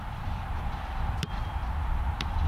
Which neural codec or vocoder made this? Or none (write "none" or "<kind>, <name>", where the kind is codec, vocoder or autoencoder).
vocoder, BigVGAN v2